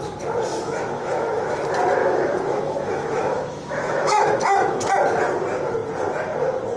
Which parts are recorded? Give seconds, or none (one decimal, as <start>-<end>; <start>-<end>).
0.0-0.5; 1.6-2.0; 4.9-6.8